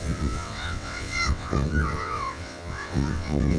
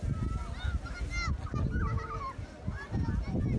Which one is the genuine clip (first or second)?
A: second